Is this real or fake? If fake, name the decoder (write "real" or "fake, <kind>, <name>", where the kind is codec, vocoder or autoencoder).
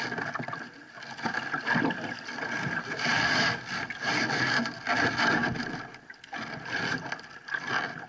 real